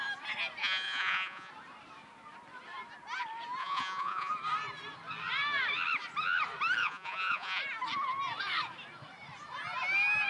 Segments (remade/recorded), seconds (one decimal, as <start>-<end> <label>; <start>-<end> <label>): 0.0-0.6 recorded; 0.6-1.5 remade; 1.5-3.6 recorded; 3.6-4.3 remade; 4.3-6.8 recorded; 6.8-7.6 remade; 7.6-10.3 recorded